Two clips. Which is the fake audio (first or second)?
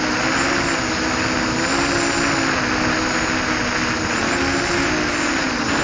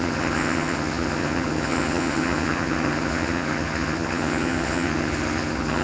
second